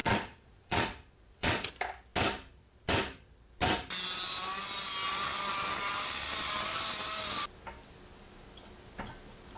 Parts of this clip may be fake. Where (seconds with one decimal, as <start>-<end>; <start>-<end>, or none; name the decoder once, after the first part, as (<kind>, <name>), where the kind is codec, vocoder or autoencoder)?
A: 0.0-1.7 (vocoder, Vocos)